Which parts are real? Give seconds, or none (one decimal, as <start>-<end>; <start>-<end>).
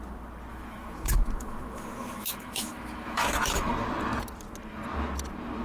0.0-0.5; 3.7-5.6